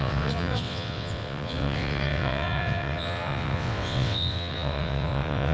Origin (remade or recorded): remade